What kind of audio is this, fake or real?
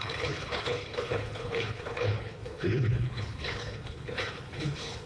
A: fake